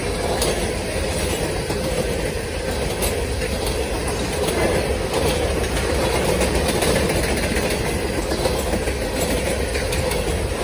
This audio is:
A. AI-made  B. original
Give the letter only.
B